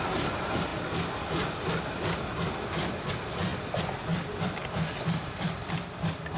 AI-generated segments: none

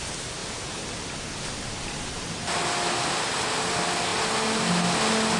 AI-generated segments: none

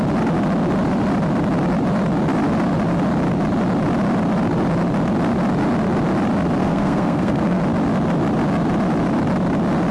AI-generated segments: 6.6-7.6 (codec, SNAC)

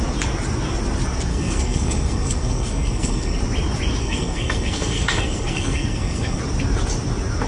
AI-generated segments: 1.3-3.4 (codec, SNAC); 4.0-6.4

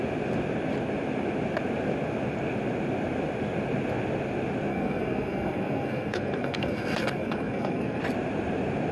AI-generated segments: 4.7-8.0 (codec, SNAC)